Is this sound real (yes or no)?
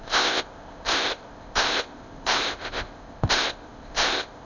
no